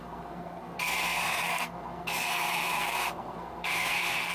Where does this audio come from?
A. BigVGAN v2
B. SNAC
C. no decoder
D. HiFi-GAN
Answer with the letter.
B